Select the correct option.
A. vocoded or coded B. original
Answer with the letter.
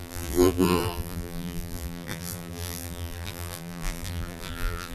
A